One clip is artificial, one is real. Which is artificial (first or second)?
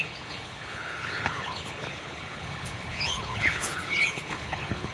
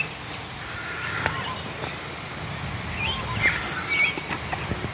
first